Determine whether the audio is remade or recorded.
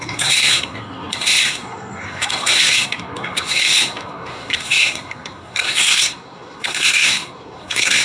remade